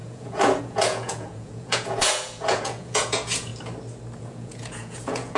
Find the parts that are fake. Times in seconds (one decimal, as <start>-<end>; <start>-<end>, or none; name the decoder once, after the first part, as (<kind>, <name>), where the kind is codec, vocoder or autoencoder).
0.0-3.5 (vocoder, Vocos); 4.2-5.4